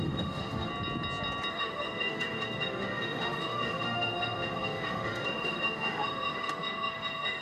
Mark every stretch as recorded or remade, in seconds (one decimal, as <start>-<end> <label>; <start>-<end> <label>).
0.0-0.7 remade; 0.7-1.5 recorded; 1.5-7.4 remade